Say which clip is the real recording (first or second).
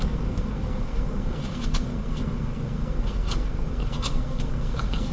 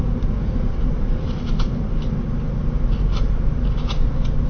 second